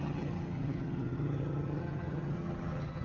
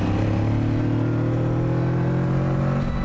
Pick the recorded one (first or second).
second